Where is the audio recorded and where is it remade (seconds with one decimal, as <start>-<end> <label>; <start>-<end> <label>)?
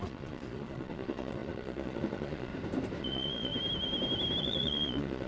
0.0-2.5 remade; 2.5-3.0 recorded; 3.0-3.5 remade; 3.5-4.4 recorded; 4.4-5.3 remade